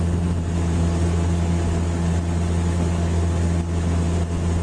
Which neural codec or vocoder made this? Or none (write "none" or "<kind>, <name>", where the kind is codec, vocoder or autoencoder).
none